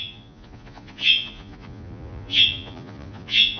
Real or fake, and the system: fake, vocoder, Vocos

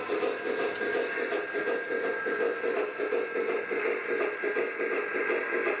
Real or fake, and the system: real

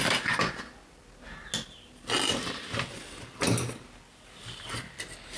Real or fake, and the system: real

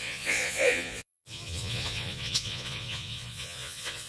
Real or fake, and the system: fake, vocoder, Vocos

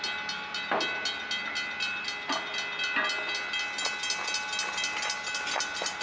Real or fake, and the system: real